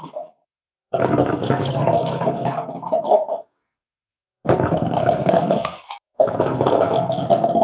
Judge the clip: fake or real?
fake